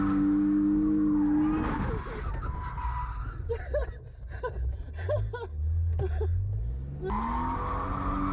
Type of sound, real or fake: real